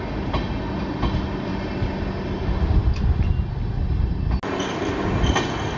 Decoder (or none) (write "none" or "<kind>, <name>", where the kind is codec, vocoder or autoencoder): none